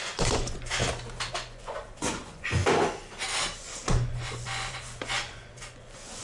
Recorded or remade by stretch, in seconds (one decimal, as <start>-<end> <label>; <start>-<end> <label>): 0.0-0.8 remade; 0.8-1.3 recorded; 1.3-2.6 remade; 2.6-3.6 recorded; 3.6-6.2 remade